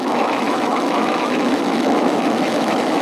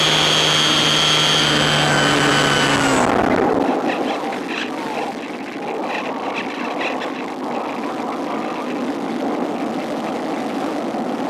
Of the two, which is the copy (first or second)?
first